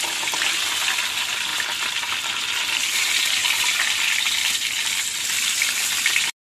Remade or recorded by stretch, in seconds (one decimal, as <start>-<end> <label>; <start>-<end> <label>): 0.0-6.4 recorded